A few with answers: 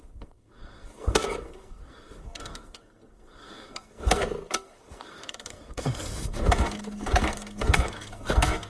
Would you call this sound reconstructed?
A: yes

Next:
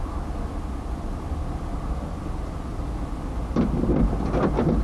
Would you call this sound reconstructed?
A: no